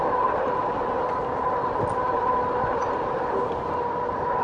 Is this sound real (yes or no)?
yes